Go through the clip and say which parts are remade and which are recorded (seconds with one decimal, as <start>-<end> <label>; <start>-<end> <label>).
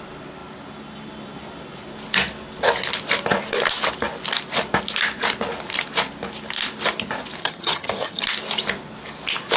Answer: 0.0-7.4 recorded; 7.4-8.2 remade; 8.2-9.6 recorded